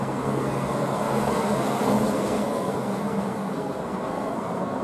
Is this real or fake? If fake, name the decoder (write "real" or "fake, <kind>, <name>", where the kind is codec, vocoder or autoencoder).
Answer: fake, codec, SNAC